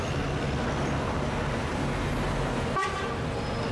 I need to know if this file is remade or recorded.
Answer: recorded